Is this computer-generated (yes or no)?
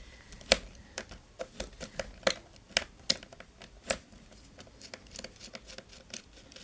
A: no